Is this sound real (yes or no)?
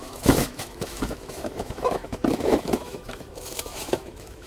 no